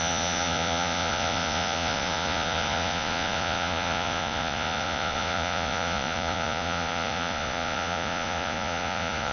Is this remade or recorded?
remade